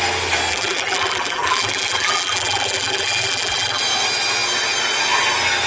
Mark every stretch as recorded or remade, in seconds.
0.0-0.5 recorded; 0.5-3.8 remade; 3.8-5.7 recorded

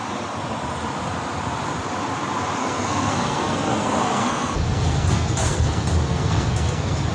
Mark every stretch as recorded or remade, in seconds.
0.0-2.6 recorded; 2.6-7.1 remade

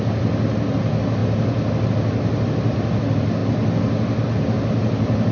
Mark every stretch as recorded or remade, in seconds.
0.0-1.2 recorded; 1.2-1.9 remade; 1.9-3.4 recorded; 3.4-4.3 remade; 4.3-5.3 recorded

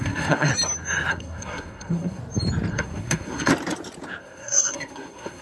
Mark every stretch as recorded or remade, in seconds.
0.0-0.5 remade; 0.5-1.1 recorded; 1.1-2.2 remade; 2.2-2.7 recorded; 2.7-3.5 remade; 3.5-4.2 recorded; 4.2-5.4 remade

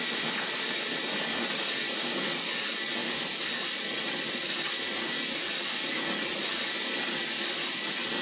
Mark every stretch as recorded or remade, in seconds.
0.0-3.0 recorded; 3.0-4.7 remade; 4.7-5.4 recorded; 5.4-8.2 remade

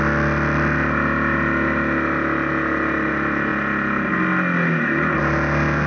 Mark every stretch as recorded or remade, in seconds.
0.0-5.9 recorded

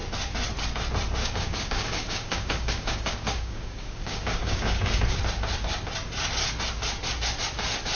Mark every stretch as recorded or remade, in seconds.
0.0-1.2 recorded; 1.2-5.2 remade; 5.2-7.9 recorded

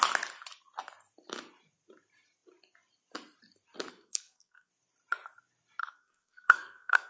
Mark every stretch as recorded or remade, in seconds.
0.0-3.9 recorded; 3.9-4.7 remade; 4.7-5.8 recorded; 5.8-7.1 remade